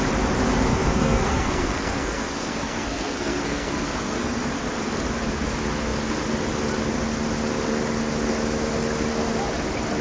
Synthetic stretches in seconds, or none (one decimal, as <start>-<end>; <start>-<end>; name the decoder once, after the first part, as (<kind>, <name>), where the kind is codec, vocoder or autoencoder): 0.7-4.5 (codec, SNAC)